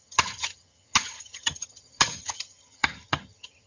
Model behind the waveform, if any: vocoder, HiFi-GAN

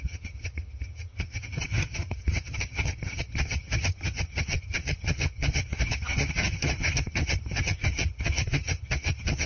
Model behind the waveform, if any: vocoder, HiFi-GAN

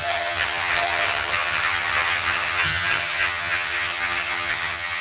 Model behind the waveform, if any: vocoder, HiFi-GAN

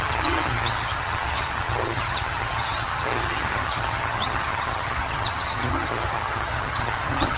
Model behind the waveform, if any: vocoder, HiFi-GAN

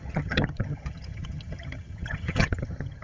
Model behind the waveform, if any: vocoder, HiFi-GAN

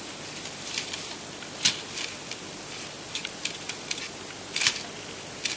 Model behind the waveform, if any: none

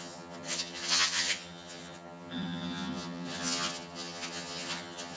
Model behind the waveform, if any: vocoder, HiFi-GAN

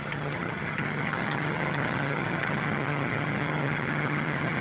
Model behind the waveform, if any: vocoder, HiFi-GAN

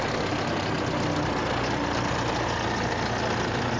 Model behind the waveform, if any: none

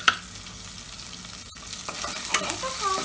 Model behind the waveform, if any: none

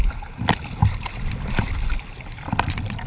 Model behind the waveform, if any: none